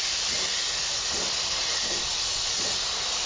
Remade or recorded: recorded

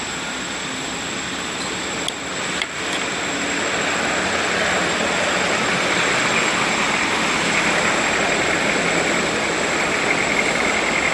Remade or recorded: recorded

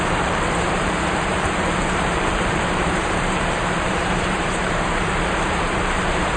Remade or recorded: remade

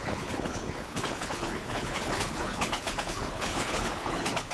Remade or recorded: remade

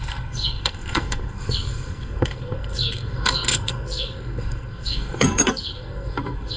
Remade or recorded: remade